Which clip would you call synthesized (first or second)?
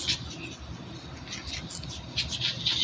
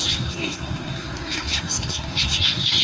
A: second